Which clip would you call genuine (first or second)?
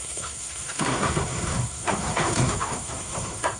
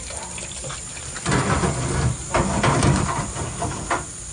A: second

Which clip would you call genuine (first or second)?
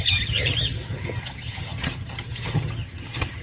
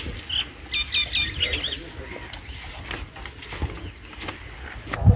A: second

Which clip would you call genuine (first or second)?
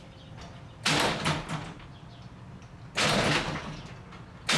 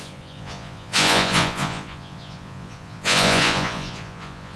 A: first